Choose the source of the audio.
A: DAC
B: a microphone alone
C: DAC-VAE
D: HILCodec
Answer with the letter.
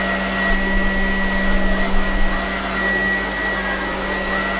B